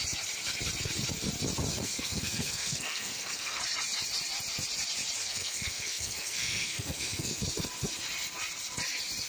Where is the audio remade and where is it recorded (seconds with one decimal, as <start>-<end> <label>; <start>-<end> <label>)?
0.0-1.7 recorded; 1.7-3.6 remade; 3.6-5.2 recorded; 5.2-7.4 remade; 7.4-9.3 recorded